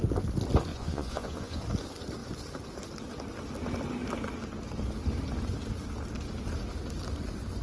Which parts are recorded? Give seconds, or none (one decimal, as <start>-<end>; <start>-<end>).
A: 0.0-0.7; 1.6-7.6